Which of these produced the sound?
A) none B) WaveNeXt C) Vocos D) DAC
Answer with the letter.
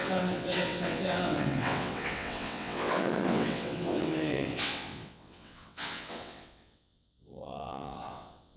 B